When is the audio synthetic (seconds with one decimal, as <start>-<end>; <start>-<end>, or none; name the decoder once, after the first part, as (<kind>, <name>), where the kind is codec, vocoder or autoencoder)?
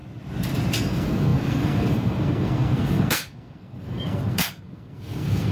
0.7-5.5 (codec, SNAC)